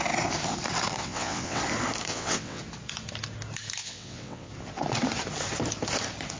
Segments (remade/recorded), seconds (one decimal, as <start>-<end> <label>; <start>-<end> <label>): 0.0-1.0 recorded; 1.0-1.6 remade; 1.6-2.1 recorded; 2.1-2.6 remade; 2.6-3.8 recorded; 3.8-4.5 remade; 4.5-6.4 recorded